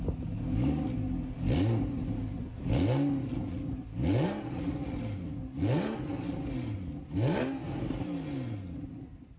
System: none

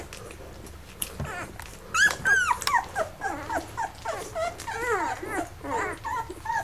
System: none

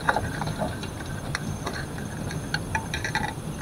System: vocoder, BigVGAN v2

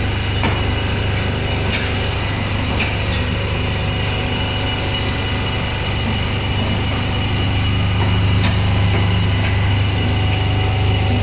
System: none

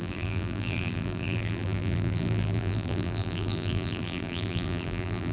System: vocoder, BigVGAN v2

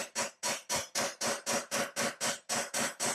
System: none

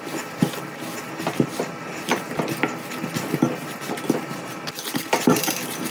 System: none